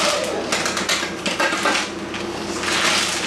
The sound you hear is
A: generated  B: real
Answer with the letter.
B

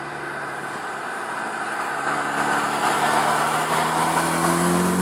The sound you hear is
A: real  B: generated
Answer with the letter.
A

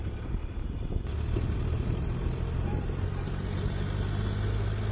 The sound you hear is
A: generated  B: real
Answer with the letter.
B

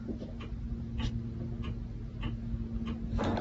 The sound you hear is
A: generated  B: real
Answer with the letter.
B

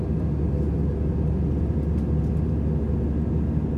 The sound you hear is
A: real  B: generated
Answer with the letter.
A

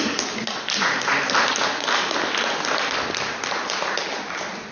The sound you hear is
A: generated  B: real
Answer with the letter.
B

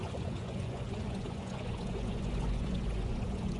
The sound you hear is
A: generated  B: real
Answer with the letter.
A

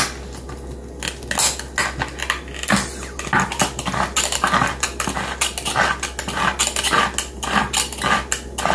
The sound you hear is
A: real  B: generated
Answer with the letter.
A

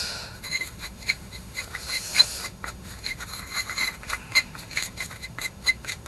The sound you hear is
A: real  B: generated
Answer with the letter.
B